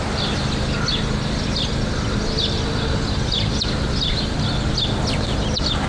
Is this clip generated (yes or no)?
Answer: no